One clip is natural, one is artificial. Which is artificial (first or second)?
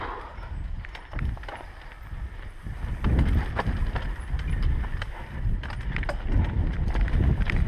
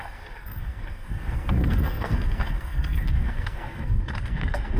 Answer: second